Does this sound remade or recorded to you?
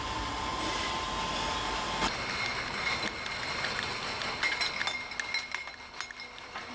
recorded